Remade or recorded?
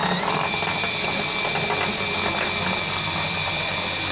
recorded